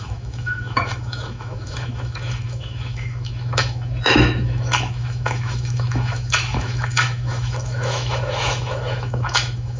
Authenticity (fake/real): fake